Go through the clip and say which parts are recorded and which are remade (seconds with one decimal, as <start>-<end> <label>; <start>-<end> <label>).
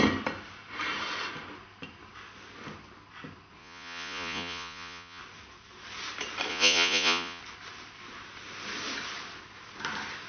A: 0.0-3.6 recorded; 3.6-5.2 remade; 5.2-6.5 recorded; 6.5-7.4 remade; 7.4-10.3 recorded